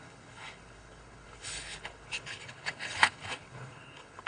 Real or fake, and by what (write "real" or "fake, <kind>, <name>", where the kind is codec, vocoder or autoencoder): fake, codec, HILCodec